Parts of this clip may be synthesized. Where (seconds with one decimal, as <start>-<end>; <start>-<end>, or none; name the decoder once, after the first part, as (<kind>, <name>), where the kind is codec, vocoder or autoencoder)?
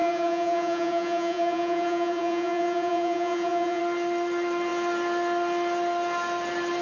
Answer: 0.0-3.8 (vocoder, Vocos)